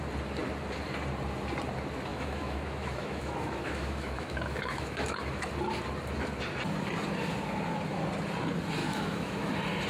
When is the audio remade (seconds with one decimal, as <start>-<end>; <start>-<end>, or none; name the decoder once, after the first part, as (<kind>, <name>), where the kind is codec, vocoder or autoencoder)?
2.1-5.4 (autoencoder, DAC-VAE); 8.8-9.5